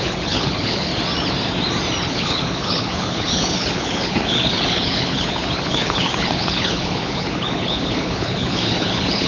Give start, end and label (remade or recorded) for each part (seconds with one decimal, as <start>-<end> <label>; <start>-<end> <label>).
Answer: 0.0-0.9 remade; 0.9-2.0 recorded; 2.0-9.3 remade